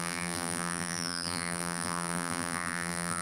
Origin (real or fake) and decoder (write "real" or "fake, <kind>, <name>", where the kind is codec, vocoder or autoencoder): fake, vocoder, BigVGAN v2